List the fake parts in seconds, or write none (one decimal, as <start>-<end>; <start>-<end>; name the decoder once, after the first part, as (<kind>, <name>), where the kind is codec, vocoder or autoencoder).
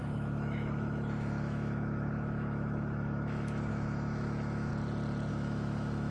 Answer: 0.0-4.7 (autoencoder, DAC-VAE); 5.3-6.1